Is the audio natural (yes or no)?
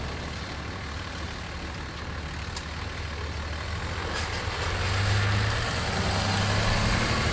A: yes